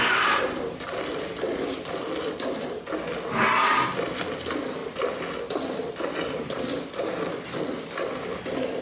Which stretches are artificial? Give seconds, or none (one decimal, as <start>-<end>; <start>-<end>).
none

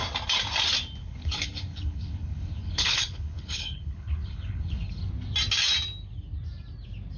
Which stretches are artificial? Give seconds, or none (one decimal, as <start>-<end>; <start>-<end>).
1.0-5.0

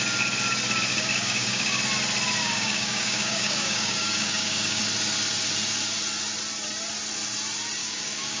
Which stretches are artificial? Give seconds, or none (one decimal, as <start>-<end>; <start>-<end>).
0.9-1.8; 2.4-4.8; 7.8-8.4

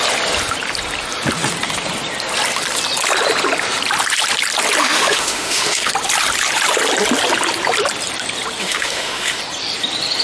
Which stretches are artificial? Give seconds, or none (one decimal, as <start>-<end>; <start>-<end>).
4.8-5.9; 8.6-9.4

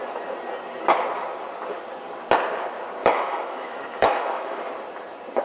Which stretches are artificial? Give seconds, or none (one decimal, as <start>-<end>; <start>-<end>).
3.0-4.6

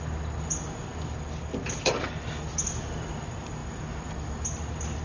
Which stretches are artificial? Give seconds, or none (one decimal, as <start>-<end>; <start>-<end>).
none

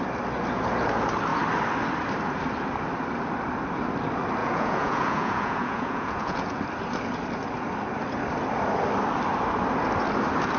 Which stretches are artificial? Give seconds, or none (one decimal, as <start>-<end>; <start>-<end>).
4.4-6.6

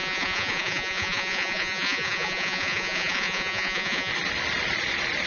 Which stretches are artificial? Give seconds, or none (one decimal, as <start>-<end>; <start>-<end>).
0.0-4.1